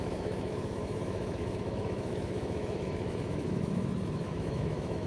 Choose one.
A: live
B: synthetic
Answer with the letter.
B